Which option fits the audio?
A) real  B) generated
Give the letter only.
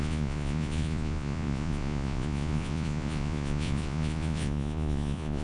B